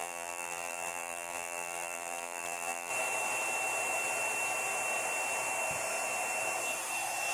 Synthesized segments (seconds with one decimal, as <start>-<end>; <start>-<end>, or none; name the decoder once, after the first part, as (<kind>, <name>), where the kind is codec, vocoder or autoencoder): 0.0-2.9 (vocoder, BigVGAN v2)